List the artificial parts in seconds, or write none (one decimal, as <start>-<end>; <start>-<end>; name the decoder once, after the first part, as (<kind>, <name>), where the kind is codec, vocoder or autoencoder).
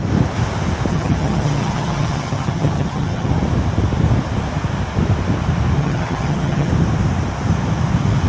0.9-3.3 (vocoder, HiFi-GAN); 5.8-6.7